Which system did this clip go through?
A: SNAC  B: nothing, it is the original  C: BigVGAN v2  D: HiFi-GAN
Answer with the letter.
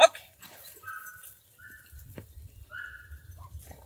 C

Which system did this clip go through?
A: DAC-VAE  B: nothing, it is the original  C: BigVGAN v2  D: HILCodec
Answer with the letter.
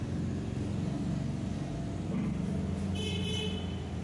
B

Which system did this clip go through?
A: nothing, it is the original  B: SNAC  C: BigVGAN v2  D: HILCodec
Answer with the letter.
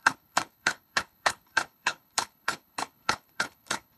D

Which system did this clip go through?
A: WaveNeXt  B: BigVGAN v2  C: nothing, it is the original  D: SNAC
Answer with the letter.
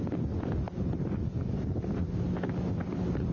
C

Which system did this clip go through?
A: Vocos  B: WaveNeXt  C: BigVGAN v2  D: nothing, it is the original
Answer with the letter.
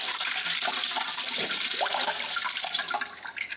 C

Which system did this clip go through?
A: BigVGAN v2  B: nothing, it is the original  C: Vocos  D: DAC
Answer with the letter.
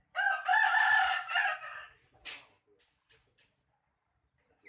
B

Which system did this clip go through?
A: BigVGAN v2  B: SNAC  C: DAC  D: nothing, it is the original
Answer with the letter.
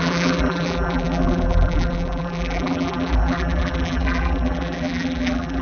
A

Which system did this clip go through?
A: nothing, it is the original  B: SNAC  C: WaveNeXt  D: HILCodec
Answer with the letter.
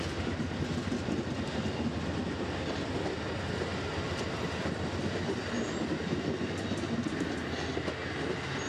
A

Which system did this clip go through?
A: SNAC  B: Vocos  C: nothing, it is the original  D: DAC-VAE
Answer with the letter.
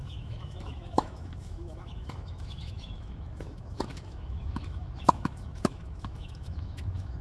D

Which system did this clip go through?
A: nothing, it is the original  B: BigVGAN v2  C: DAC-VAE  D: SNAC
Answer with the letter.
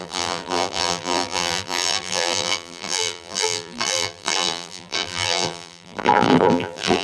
B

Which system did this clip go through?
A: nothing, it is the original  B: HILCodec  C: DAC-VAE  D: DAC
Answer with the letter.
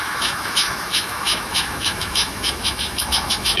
C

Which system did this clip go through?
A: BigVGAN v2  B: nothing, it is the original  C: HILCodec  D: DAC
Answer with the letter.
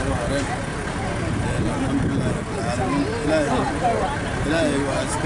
B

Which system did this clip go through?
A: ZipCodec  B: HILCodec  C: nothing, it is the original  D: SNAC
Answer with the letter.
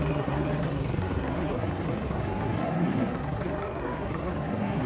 D